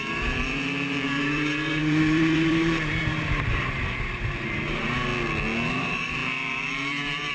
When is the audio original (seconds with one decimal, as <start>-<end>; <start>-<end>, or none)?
5.1-5.7